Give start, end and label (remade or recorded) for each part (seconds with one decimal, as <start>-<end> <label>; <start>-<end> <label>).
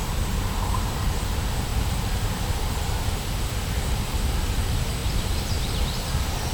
0.0-1.7 remade; 1.7-2.7 recorded; 2.7-6.5 remade